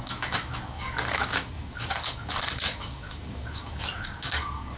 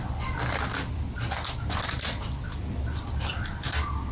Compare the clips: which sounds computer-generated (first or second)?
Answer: first